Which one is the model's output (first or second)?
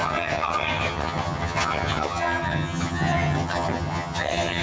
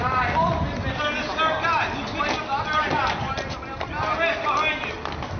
first